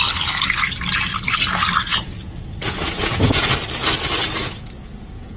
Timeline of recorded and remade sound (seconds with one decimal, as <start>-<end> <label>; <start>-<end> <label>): 0.0-1.9 recorded; 1.9-3.5 remade; 3.5-4.4 recorded; 4.4-5.4 remade